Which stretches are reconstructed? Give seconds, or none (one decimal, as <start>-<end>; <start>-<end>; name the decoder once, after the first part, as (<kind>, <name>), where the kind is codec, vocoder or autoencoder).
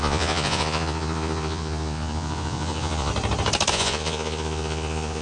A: 0.0-3.1 (vocoder, Vocos); 3.7-5.2